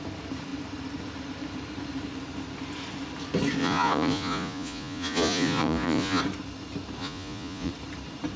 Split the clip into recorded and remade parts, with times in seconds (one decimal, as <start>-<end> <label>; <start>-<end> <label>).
0.0-3.6 recorded; 3.6-6.2 remade; 6.2-7.0 recorded; 7.0-7.7 remade; 7.7-8.4 recorded